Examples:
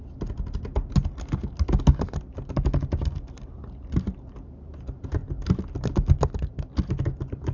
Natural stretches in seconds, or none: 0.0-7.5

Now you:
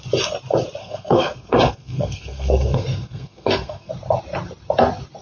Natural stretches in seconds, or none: 0.0-0.8; 3.9-5.2

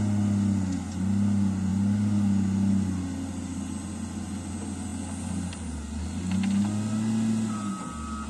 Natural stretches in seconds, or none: 0.0-8.3

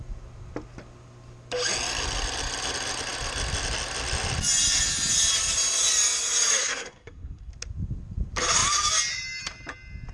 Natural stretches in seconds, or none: 0.0-6.6; 7.5-10.1

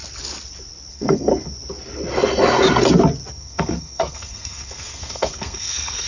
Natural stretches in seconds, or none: 0.0-0.9; 1.3-3.3

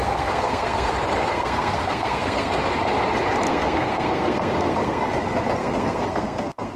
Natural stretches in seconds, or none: 0.9-1.3; 2.5-3.5; 5.1-5.6

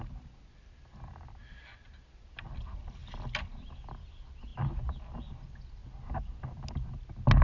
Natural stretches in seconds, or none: 0.0-7.4